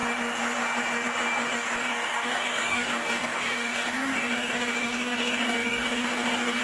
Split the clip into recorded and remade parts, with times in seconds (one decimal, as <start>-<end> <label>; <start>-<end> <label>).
0.0-1.8 recorded; 1.8-6.6 remade